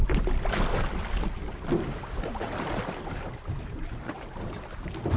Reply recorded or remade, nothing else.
recorded